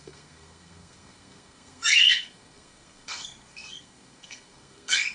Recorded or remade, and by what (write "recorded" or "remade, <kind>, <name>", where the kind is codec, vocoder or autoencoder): remade, codec, SNAC